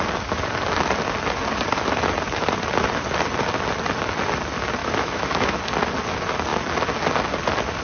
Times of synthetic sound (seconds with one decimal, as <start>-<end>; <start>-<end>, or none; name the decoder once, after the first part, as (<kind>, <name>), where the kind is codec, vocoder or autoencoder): 4.8-5.6 (autoencoder, DAC-VAE)